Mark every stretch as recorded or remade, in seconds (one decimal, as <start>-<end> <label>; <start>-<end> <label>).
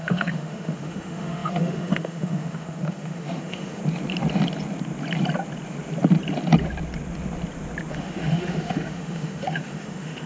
0.0-3.8 remade; 3.8-7.9 recorded; 7.9-10.3 remade